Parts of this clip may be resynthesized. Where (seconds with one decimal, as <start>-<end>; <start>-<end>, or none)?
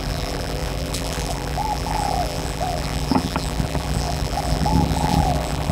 0.0-5.7